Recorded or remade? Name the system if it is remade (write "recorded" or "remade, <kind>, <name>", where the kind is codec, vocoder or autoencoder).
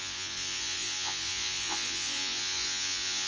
remade, vocoder, Vocos